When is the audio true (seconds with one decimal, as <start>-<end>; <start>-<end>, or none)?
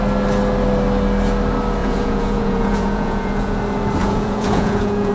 0.0-1.8; 3.6-4.0